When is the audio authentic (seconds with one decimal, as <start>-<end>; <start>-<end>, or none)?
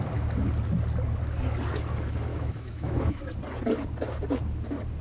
0.0-2.3; 3.2-5.0